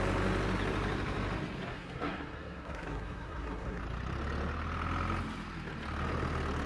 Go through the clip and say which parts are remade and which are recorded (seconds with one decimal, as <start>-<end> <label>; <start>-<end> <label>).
0.0-1.7 recorded; 1.7-3.8 remade; 3.8-6.7 recorded